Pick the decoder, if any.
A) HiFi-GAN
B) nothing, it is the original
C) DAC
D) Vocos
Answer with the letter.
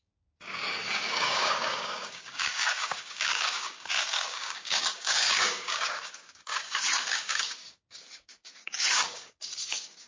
C